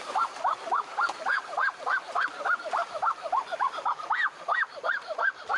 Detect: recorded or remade recorded